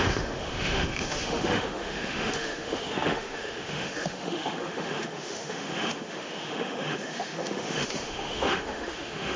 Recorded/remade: remade